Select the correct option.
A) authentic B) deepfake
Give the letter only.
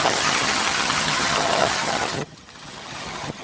B